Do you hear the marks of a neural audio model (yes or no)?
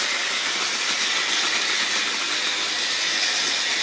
no